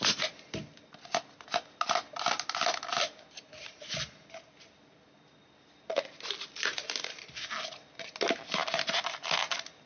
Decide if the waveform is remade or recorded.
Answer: recorded